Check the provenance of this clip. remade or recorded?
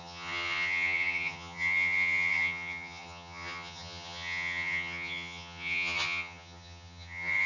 remade